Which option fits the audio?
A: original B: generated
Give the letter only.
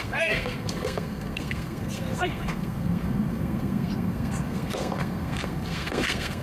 B